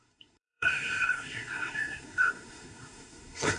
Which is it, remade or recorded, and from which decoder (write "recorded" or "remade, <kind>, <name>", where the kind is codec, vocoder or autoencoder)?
remade, codec, SNAC